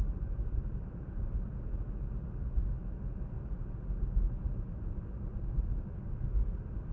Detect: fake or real real